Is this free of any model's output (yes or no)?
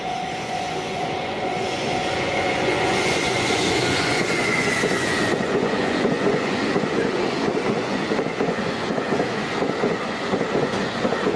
no